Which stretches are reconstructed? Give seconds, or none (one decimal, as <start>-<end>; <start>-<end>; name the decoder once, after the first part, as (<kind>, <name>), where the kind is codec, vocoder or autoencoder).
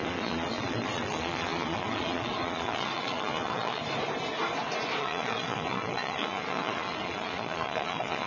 0.0-3.8 (vocoder, Vocos); 5.0-8.3